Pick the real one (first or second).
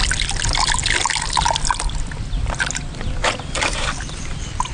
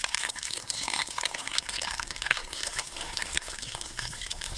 first